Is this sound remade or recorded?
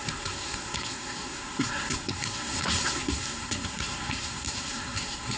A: remade